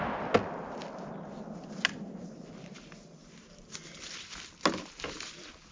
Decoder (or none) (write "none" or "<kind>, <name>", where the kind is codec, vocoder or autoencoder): none